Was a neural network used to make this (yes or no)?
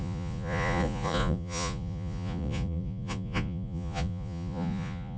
yes